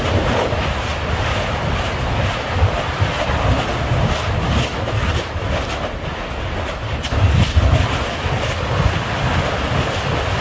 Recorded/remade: recorded